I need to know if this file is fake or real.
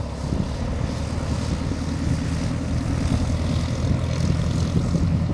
real